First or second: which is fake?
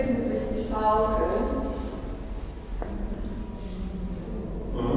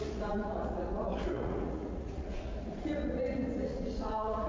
second